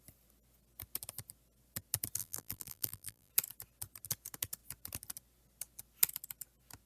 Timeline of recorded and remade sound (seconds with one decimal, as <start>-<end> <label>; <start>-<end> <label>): 0.0-2.2 recorded; 2.2-3.3 remade; 3.3-6.9 recorded